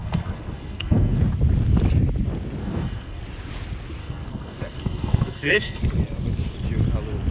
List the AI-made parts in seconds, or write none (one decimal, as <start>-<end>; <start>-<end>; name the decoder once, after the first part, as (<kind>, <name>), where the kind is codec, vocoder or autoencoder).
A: 0.0-1.2 (codec, SNAC); 2.6-3.2; 4.0-5.8

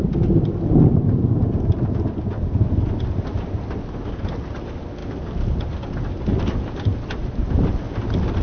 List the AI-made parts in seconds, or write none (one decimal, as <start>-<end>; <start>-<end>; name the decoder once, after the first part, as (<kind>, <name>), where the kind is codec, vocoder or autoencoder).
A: none

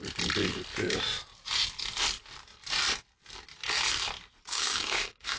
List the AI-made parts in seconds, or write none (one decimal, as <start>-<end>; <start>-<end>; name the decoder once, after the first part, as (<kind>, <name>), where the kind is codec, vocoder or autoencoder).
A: 4.5-5.4 (codec, DAC)